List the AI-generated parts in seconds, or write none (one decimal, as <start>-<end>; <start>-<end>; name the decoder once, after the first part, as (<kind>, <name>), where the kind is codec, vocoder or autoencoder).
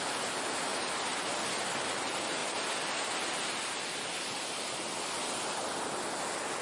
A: none